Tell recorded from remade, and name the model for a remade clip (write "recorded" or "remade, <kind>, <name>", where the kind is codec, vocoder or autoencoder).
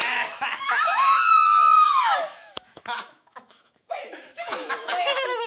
remade, autoencoder, DAC-VAE